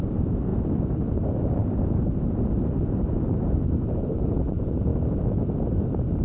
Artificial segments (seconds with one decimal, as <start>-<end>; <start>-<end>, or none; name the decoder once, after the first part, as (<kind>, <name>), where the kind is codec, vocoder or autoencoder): 0.0-0.5 (vocoder, BigVGAN v2); 1.1-4.9; 5.6-6.2